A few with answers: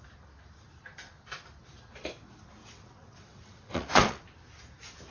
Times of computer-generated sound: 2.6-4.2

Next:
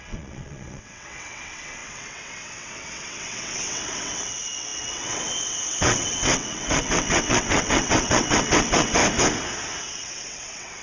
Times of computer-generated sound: 0.0-9.0; 9.9-10.8

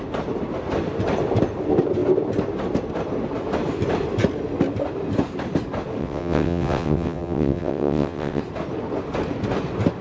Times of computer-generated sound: 6.0-8.4

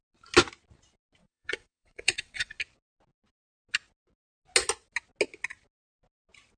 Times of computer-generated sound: 1.2-2.6

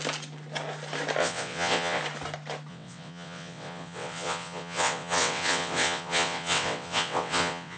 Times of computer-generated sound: 1.2-2.0; 2.7-7.8

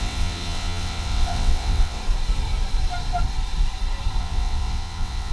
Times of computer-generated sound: 0.0-2.0; 4.2-5.3

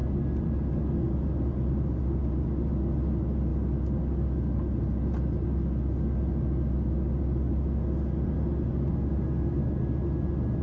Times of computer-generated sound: none

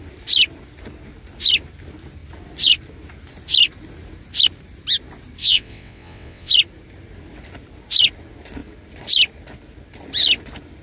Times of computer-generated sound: 5.4-6.5